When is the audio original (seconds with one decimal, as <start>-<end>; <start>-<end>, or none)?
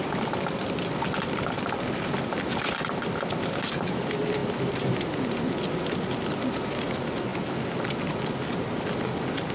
0.0-9.5